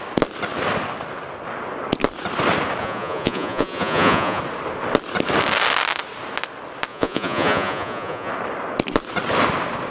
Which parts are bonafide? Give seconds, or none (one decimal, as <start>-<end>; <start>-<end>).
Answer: 0.0-2.8; 4.4-6.9; 8.3-9.9